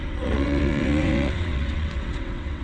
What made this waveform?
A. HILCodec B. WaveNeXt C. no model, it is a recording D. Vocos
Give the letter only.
B